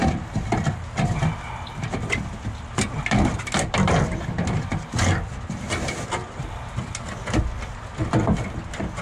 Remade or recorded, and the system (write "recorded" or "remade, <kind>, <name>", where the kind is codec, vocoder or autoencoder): recorded